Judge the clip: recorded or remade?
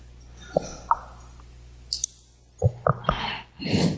recorded